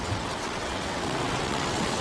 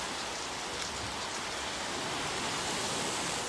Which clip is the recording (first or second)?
second